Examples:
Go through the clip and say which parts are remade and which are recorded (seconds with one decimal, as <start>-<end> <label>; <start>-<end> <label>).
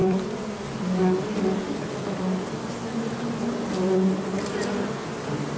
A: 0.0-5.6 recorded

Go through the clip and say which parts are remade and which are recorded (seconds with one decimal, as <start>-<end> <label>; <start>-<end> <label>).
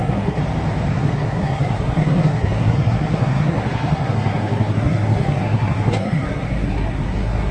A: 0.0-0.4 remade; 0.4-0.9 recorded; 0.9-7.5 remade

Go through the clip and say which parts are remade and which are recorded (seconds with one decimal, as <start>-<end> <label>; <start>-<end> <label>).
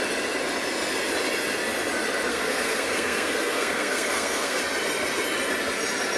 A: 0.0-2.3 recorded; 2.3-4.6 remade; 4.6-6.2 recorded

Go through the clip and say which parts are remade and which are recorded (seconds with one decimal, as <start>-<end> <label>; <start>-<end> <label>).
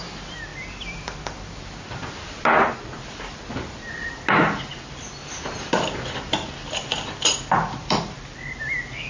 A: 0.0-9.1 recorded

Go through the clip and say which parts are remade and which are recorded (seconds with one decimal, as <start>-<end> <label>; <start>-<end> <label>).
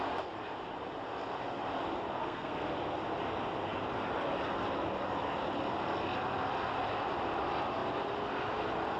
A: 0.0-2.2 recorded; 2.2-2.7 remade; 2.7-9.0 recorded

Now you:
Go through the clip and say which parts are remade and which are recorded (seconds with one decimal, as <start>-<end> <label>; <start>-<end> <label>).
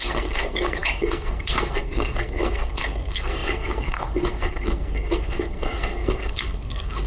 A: 0.0-7.1 remade